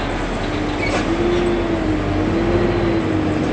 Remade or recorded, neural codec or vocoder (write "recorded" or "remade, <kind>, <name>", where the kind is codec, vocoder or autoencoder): recorded